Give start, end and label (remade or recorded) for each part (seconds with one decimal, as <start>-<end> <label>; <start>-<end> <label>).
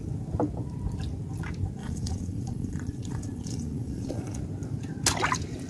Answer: 0.0-1.8 recorded; 1.8-4.4 remade; 4.4-5.7 recorded